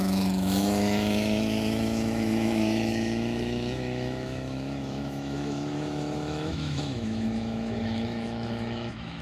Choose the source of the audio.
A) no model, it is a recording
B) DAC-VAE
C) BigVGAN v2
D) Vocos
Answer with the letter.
B